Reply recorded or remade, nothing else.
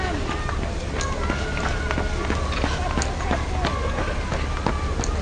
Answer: recorded